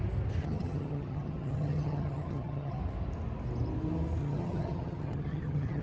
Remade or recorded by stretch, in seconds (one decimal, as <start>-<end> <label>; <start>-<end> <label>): 0.0-0.4 recorded; 0.4-2.8 remade; 2.8-4.2 recorded; 4.2-5.8 remade